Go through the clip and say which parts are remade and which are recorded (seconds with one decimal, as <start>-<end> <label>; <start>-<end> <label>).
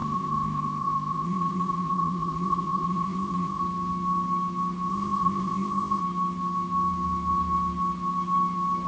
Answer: 0.0-3.6 remade; 3.6-4.9 recorded; 4.9-6.0 remade; 6.0-8.9 recorded